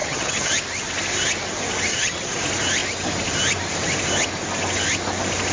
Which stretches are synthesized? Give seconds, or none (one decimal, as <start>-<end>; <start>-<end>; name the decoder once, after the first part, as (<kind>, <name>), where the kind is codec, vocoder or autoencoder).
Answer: 0.0-0.5 (vocoder, HiFi-GAN); 1.9-2.4